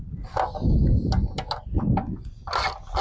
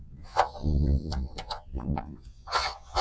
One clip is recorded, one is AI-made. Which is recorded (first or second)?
first